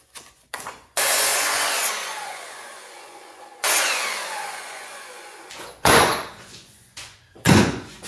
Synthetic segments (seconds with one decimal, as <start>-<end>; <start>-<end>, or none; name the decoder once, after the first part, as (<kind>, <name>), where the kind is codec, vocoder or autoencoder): 0.0-8.1 (vocoder, Vocos)

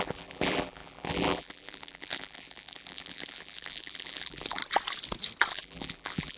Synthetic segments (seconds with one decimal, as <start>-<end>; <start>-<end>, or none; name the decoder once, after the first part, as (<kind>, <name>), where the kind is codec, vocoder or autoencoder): 0.0-4.6 (vocoder, BigVGAN v2); 5.5-6.4

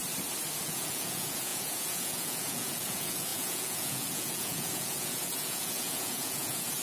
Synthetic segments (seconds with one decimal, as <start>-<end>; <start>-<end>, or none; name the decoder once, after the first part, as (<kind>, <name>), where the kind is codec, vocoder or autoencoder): 0.6-6.8 (vocoder, Vocos)

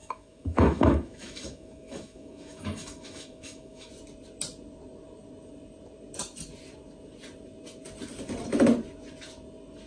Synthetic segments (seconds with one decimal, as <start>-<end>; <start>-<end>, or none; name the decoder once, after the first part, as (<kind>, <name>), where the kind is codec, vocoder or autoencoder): 0.0-3.9 (autoencoder, DAC-VAE)

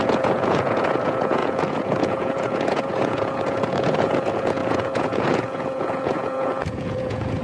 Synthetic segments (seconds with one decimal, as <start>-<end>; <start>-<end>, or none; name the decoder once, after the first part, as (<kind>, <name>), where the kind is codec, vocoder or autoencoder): 0.0-7.4 (vocoder, Vocos)